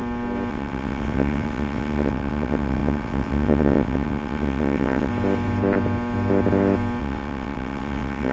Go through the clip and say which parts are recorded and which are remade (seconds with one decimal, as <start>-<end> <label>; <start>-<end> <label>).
0.0-0.5 recorded; 0.5-5.1 remade; 5.1-7.0 recorded; 7.0-8.3 remade

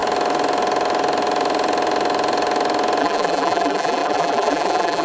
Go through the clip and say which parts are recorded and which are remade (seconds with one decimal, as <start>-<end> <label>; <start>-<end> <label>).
0.0-3.0 recorded; 3.0-5.0 remade